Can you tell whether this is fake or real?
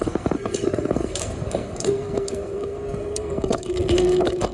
fake